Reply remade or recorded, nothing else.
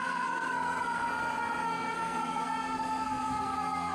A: remade